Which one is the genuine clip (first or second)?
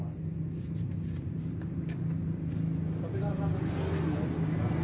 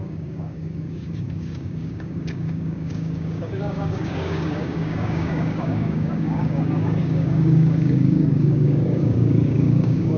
first